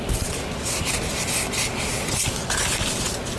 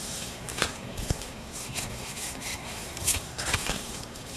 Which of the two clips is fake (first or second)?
second